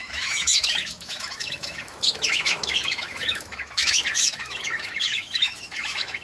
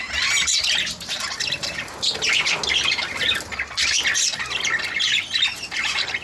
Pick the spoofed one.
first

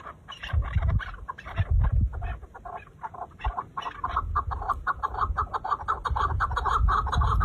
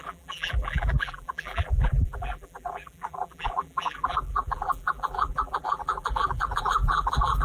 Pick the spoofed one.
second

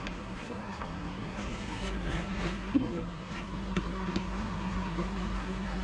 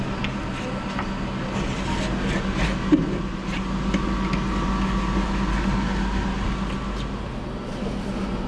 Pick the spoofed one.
first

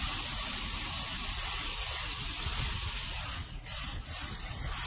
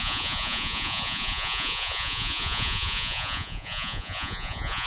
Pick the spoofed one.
second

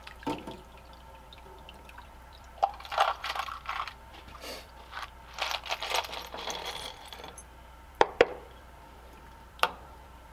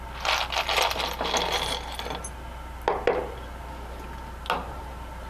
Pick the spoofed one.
first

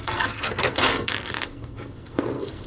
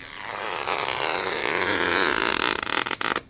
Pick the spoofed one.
first